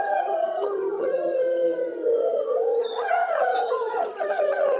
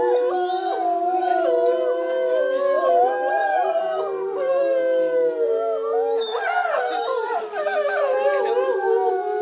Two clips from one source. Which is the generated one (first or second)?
first